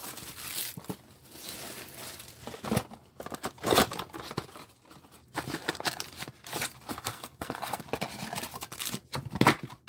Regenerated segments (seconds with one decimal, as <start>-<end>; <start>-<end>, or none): 6.9-7.8